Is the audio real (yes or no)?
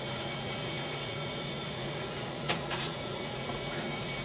no